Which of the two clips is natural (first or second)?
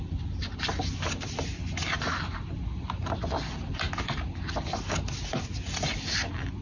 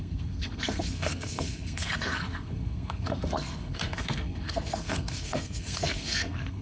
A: first